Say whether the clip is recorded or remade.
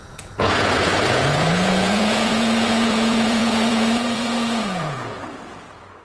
remade